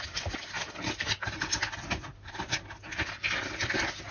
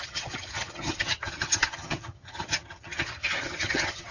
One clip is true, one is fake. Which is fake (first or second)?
second